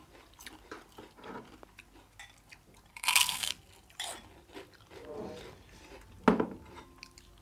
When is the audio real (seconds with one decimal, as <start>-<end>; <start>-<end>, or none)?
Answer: 0.0-2.9; 3.5-7.4